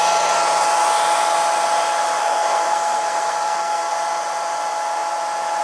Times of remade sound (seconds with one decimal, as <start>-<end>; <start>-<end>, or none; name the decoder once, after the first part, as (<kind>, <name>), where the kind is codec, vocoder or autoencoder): 2.2-3.9 (codec, SNAC)